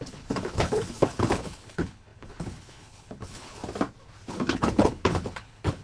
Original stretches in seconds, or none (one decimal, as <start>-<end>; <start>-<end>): 3.6-4.3